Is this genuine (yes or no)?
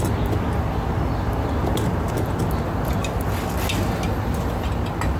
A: yes